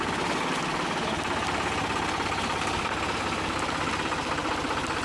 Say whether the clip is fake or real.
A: real